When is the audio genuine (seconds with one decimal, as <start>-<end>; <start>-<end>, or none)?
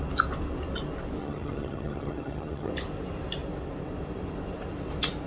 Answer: 0.0-1.2; 2.7-5.3